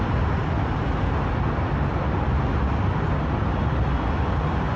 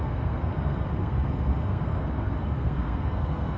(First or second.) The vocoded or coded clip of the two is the second